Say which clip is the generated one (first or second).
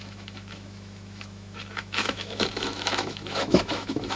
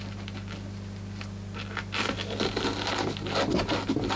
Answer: first